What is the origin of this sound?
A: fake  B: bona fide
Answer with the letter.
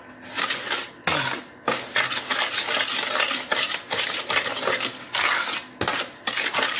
B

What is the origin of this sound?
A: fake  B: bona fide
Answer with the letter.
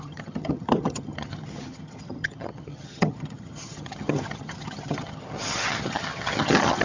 A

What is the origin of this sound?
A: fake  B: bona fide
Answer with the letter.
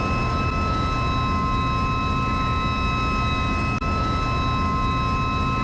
B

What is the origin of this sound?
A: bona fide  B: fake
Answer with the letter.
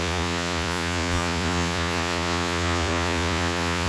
B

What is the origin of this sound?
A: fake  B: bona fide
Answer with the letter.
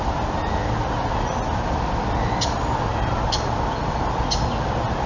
B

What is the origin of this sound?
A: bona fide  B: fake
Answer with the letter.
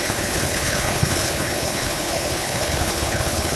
B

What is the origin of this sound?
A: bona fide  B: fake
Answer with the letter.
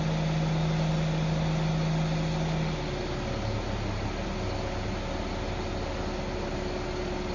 A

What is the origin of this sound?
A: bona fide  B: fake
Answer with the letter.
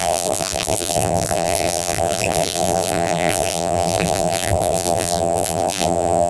B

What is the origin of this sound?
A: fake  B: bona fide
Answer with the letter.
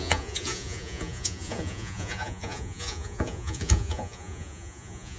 A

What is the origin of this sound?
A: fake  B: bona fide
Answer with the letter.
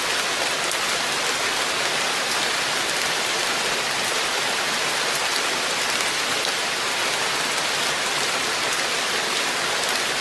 B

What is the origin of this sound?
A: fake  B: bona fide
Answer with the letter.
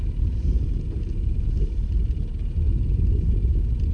B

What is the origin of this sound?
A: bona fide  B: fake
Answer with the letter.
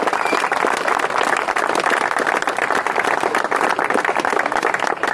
A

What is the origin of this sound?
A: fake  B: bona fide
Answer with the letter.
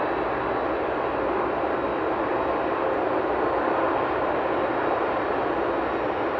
B